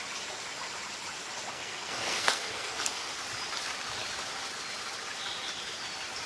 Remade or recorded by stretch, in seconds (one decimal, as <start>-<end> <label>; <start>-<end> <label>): 0.0-1.5 recorded; 1.5-3.1 remade; 3.1-6.3 recorded